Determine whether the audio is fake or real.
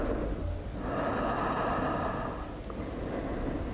real